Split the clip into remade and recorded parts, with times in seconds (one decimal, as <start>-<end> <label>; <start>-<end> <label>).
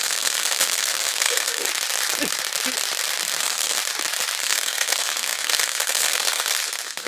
0.0-1.7 remade; 1.7-3.4 recorded; 3.4-3.8 remade; 3.8-4.4 recorded; 4.4-7.1 remade